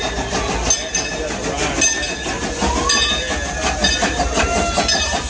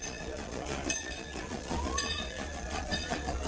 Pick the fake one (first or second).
second